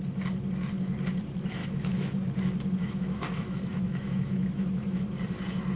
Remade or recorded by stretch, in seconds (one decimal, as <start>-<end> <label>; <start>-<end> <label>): 0.0-1.6 recorded; 1.6-2.2 remade; 2.2-2.8 recorded; 2.8-5.0 remade; 5.0-5.8 recorded